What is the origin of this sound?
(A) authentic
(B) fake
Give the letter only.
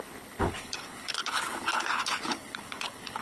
B